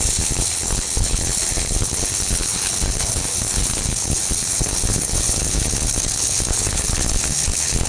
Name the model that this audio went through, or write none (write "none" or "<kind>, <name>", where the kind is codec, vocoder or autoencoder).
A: codec, HILCodec